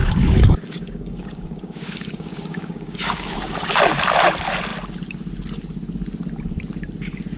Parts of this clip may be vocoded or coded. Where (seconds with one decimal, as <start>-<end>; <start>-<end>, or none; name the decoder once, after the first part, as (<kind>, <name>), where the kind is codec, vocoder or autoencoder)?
0.0-3.7 (codec, DAC)